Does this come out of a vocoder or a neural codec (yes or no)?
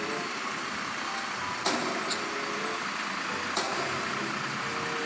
no